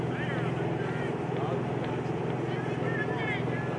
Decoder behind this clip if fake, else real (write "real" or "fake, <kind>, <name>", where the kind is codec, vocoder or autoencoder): real